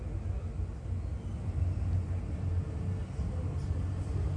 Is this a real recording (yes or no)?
yes